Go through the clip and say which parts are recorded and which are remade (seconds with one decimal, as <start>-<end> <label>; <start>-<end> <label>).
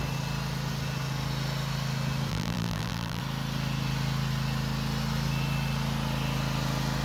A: 0.0-2.3 recorded; 2.3-3.2 remade; 3.2-7.0 recorded